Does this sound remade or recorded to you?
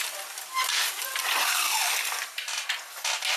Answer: recorded